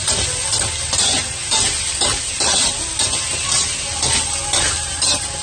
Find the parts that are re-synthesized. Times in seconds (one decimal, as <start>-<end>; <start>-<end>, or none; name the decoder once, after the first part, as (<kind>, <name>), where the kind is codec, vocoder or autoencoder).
none